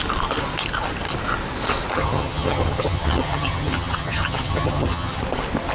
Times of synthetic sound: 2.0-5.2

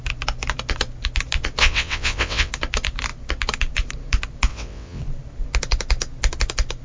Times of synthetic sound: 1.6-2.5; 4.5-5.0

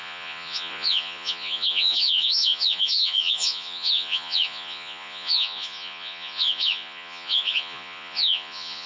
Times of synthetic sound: 0.0-8.9

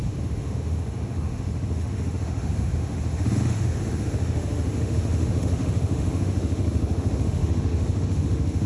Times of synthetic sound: 0.0-8.7